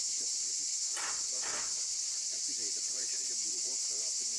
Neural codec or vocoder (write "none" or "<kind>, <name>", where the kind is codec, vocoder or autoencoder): none